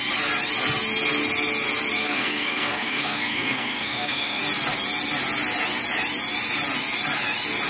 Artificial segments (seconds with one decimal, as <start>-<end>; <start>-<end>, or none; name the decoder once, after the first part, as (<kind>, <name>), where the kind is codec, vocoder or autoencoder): 2.0-4.4 (codec, SNAC)